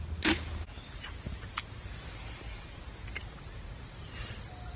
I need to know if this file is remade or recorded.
recorded